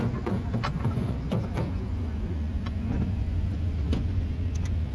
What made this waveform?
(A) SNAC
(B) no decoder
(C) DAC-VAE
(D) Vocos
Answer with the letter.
D